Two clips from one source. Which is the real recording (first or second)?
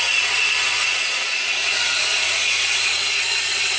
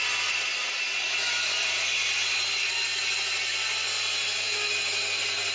second